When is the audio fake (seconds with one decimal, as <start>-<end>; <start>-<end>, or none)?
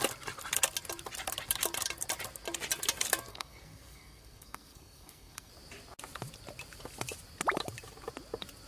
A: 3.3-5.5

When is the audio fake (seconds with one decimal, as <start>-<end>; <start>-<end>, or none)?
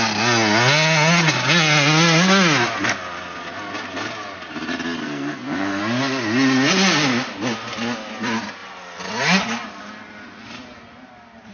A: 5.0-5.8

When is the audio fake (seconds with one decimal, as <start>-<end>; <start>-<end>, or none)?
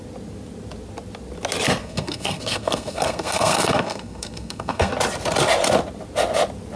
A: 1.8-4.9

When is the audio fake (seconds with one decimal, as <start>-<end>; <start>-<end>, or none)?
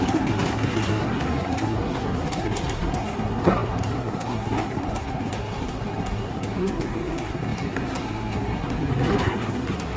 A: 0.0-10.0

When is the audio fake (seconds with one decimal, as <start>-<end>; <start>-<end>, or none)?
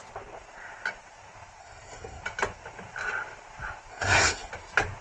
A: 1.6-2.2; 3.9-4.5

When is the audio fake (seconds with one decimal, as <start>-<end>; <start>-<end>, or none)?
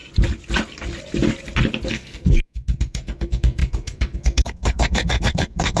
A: 1.9-5.8